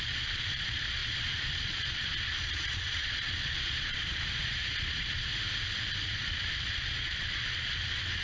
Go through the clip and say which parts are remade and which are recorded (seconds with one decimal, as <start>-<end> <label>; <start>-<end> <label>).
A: 0.0-5.3 remade; 5.3-6.0 recorded; 6.0-8.2 remade